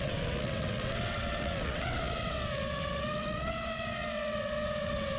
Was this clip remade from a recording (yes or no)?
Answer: yes